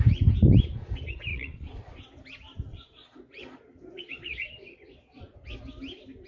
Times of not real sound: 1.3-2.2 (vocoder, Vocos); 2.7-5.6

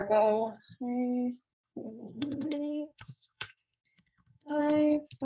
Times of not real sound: 0.0-0.6 (codec, SNAC); 1.5-4.6